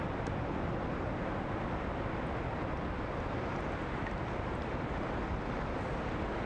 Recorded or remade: recorded